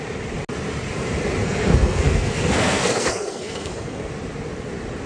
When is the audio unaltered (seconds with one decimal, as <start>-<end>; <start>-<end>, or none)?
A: 0.0-1.4; 4.1-5.1